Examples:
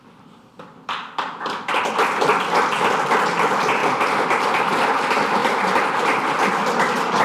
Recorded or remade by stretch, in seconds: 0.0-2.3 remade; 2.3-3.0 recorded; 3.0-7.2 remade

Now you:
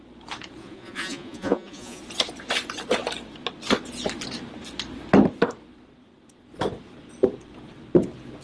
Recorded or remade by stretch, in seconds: 0.0-0.6 recorded; 0.6-2.0 remade; 2.0-8.4 recorded

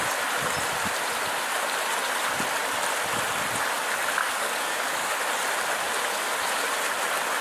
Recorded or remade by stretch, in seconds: 0.0-4.2 recorded; 4.2-5.2 remade; 5.2-7.4 recorded

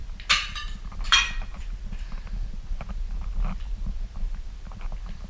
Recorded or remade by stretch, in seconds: 0.0-5.3 recorded

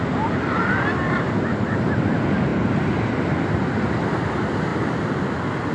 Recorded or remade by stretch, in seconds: 0.0-1.5 recorded; 1.5-2.0 remade; 2.0-4.7 recorded; 4.7-5.2 remade; 5.2-5.7 recorded